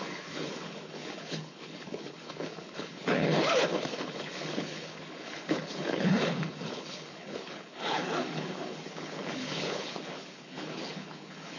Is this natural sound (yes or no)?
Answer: no